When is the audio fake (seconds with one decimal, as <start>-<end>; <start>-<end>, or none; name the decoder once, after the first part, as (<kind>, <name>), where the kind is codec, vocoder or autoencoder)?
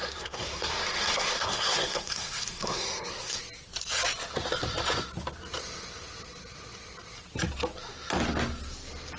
0.0-3.4 (codec, SNAC)